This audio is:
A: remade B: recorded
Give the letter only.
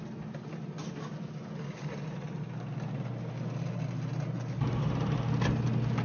B